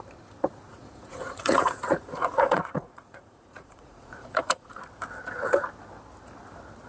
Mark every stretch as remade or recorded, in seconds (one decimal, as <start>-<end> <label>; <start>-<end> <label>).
0.0-0.7 recorded; 0.7-4.8 remade; 4.8-6.9 recorded